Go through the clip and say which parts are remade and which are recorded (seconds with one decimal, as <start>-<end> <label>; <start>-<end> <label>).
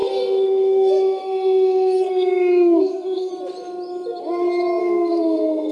0.0-3.3 remade; 3.3-4.8 recorded; 4.8-5.7 remade